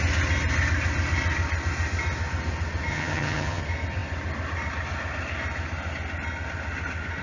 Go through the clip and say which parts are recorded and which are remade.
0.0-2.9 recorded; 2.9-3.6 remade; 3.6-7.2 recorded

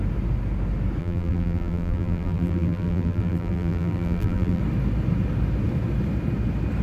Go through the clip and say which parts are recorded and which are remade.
0.0-1.0 recorded; 1.0-4.6 remade; 4.6-6.8 recorded

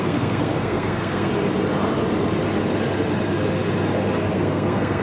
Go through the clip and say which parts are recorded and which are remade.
0.0-1.3 remade; 1.3-4.3 recorded; 4.3-5.0 remade

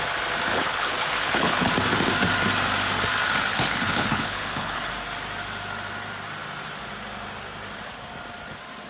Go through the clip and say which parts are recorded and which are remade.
0.0-0.5 recorded; 0.5-1.7 remade; 1.7-3.5 recorded; 3.5-4.9 remade; 4.9-8.9 recorded

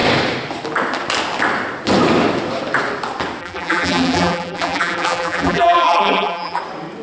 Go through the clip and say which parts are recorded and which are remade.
0.0-3.4 recorded; 3.4-6.6 remade; 6.6-7.0 recorded